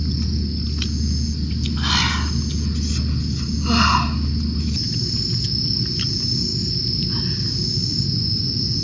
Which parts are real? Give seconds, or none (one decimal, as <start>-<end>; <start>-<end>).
0.0-8.8